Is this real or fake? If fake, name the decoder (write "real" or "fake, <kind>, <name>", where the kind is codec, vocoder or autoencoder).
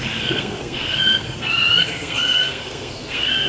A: fake, codec, SNAC